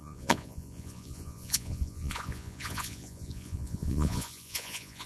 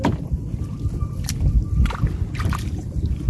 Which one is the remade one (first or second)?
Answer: first